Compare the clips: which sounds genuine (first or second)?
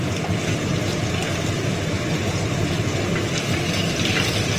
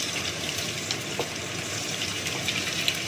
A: first